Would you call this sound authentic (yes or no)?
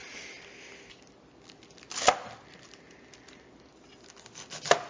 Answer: yes